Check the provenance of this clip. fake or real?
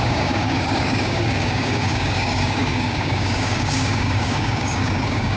fake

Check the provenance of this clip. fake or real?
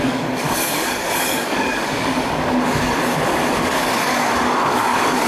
fake